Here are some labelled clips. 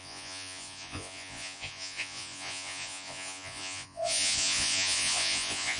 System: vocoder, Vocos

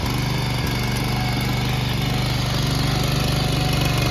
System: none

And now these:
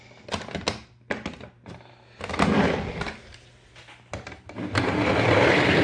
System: none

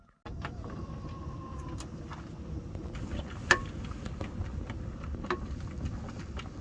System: none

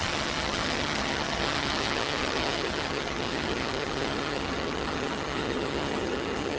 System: vocoder, HiFi-GAN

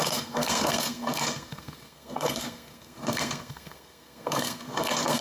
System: codec, SNAC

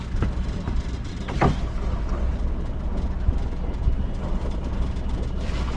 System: none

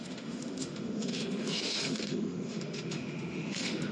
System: autoencoder, DAC-VAE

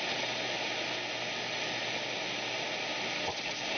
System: none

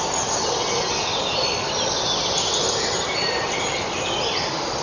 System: none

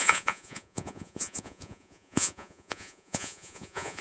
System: vocoder, Vocos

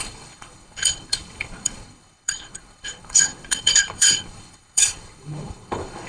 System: codec, HILCodec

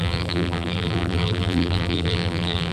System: vocoder, BigVGAN v2